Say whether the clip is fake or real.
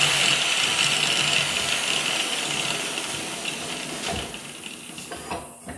real